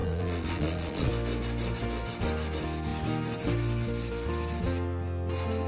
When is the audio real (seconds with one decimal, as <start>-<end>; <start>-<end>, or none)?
1.1-5.7